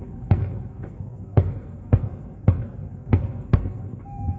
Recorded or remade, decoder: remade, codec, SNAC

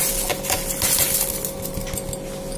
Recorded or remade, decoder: recorded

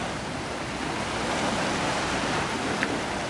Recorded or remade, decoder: recorded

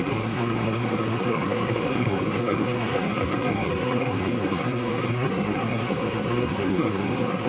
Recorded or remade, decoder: remade, codec, SNAC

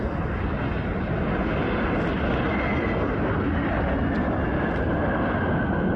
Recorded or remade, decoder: recorded